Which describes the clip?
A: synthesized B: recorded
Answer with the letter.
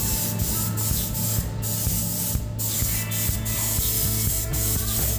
B